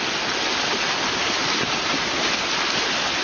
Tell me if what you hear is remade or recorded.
recorded